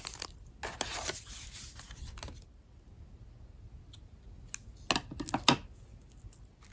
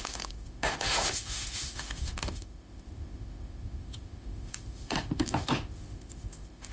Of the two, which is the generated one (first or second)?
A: second